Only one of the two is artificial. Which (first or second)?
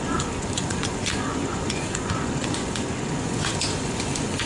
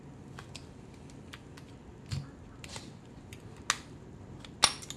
first